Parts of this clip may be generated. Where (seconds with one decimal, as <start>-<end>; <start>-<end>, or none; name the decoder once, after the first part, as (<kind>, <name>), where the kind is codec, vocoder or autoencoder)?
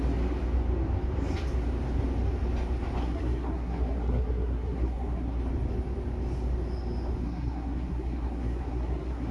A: 3.0-5.4 (codec, SNAC); 7.2-9.3